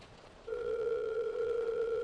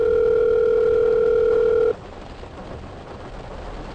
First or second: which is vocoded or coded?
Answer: first